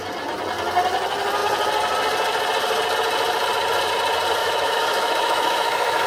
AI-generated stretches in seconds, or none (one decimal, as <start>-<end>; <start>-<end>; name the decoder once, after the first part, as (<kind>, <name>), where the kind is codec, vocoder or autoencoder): 4.4-6.1 (autoencoder, DAC-VAE)